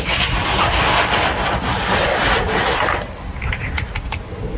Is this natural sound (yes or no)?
yes